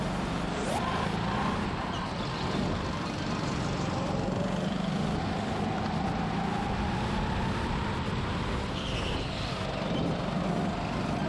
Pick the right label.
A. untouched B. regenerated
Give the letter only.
A